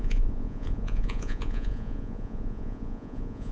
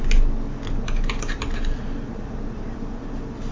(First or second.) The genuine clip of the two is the second